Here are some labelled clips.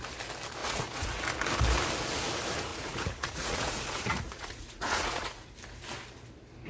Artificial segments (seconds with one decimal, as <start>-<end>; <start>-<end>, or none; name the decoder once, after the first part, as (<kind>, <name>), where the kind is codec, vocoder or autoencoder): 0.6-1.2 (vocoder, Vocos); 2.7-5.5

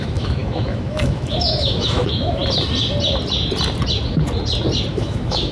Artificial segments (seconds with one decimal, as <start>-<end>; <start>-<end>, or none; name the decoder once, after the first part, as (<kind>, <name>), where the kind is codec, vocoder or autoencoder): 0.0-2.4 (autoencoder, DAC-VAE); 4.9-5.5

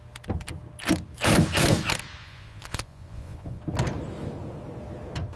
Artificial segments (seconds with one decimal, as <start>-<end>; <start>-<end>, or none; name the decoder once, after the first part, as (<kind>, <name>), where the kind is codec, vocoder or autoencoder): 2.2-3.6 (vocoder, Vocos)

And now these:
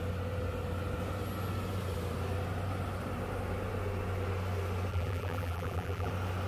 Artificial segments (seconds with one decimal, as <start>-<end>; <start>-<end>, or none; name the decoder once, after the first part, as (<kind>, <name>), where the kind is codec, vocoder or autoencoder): 4.9-6.1 (vocoder, BigVGAN v2)

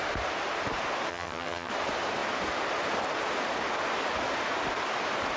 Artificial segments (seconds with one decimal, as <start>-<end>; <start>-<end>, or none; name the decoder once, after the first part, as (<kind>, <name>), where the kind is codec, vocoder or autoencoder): 1.1-1.7 (vocoder, HiFi-GAN)

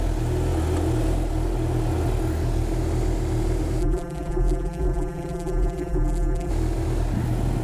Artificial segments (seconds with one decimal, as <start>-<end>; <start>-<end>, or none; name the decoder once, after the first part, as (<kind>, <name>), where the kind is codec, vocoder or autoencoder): 3.8-6.5 (vocoder, BigVGAN v2)

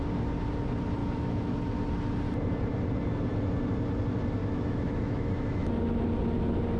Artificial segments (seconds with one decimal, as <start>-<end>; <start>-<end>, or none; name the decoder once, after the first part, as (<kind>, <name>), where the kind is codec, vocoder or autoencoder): 1.0-1.6 (autoencoder, DAC-VAE); 4.4-5.7

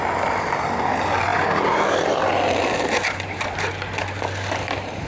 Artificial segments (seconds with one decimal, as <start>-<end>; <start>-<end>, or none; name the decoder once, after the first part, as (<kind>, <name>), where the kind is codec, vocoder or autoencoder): none